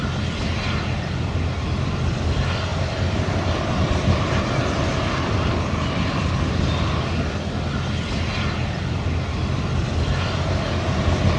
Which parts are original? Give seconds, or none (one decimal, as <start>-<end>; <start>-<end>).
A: 0.0-2.7; 4.3-11.4